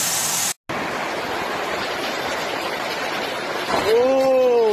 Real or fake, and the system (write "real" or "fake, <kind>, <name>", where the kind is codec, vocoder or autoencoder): real